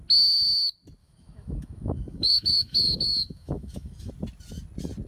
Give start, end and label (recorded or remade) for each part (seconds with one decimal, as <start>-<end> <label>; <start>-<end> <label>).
0.0-1.0 recorded; 1.0-4.1 remade; 4.1-5.1 recorded